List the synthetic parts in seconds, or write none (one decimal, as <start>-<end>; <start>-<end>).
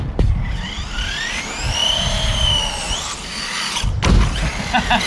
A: none